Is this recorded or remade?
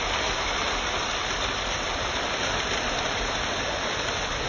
remade